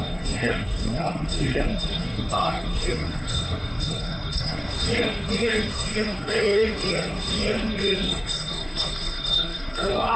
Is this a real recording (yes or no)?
no